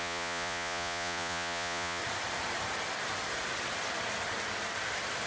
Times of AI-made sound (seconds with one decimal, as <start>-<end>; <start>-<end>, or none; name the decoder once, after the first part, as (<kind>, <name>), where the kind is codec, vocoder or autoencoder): 0.0-2.0 (vocoder, Vocos)

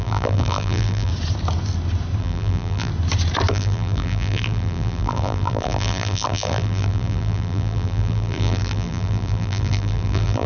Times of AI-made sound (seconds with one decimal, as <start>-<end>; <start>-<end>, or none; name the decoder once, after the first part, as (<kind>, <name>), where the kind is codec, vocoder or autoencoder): 0.0-1.1 (vocoder, BigVGAN v2); 2.2-2.9; 3.5-10.5

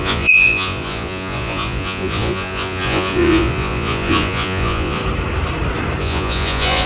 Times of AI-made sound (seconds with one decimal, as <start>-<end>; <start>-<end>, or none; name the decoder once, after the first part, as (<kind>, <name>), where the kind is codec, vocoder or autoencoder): 0.0-5.0 (vocoder, Vocos); 6.0-6.9

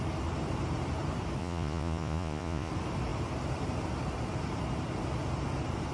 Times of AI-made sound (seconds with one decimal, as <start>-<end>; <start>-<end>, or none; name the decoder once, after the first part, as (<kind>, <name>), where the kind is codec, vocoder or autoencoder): 1.4-2.7 (vocoder, Vocos)

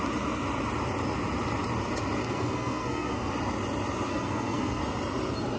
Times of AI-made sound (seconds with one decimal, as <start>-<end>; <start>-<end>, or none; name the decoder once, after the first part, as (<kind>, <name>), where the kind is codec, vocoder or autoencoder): 2.2-3.3 (codec, SNAC); 4.1-4.8

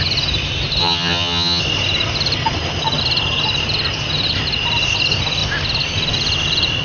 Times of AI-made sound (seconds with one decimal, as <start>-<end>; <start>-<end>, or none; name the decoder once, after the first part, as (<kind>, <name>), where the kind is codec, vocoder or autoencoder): 0.8-1.6 (vocoder, HiFi-GAN)